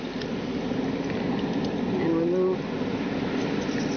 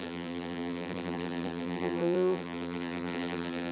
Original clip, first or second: first